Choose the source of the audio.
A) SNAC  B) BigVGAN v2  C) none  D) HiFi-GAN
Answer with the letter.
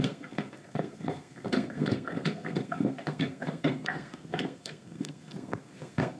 A